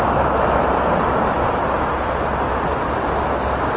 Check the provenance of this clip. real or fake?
real